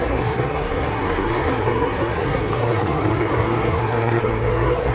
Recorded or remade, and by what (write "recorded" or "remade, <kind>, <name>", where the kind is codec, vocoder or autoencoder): remade, codec, SNAC